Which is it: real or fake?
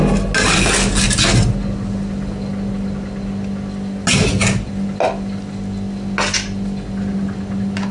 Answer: real